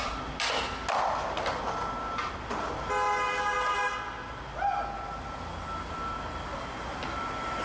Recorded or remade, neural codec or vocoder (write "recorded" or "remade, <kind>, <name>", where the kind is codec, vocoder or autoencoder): recorded